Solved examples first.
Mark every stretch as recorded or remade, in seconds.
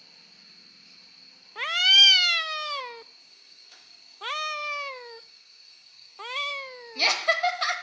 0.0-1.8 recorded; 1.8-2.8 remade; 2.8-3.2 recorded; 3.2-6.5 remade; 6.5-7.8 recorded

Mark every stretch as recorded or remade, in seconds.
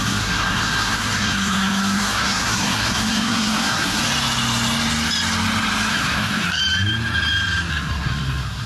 0.0-4.0 remade; 4.0-5.9 recorded; 5.9-6.6 remade; 6.6-7.7 recorded; 7.7-8.7 remade